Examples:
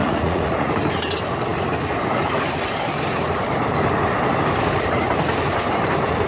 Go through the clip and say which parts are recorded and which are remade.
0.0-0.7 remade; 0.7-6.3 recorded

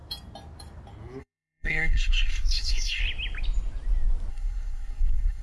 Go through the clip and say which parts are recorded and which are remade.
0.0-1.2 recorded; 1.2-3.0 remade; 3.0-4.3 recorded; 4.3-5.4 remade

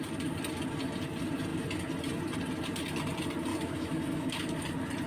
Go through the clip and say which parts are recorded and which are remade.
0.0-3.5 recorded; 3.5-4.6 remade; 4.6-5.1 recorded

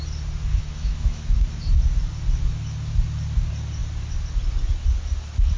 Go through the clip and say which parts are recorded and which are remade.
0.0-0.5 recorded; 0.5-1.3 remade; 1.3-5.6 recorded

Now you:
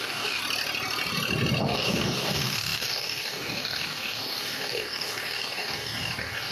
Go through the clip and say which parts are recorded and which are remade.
0.0-0.4 remade; 0.4-1.6 recorded; 1.6-6.5 remade

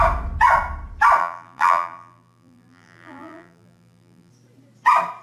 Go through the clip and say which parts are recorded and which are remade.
0.0-1.2 recorded; 1.2-4.3 remade; 4.3-5.2 recorded

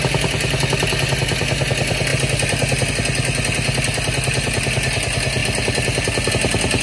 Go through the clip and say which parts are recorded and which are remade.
0.0-6.8 recorded

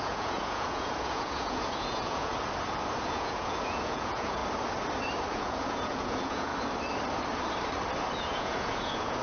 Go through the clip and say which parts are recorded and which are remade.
0.0-2.3 remade; 2.3-3.0 recorded; 3.0-4.4 remade; 4.4-5.3 recorded; 5.3-6.5 remade; 6.5-8.2 recorded; 8.2-9.2 remade